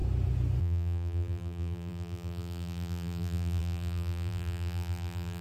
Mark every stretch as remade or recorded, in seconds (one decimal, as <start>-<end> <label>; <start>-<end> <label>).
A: 0.0-0.6 recorded; 0.6-5.4 remade